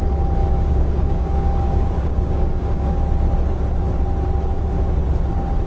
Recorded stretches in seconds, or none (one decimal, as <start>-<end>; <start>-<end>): 0.0-0.4; 3.0-5.7